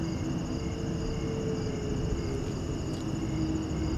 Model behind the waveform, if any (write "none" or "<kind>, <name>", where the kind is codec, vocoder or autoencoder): none